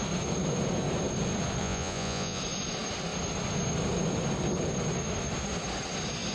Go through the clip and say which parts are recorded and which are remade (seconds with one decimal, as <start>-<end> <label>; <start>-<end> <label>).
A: 0.0-1.6 recorded; 1.6-2.4 remade; 2.4-6.3 recorded